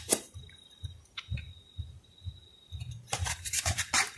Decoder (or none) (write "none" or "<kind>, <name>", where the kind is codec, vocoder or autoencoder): vocoder, BigVGAN v2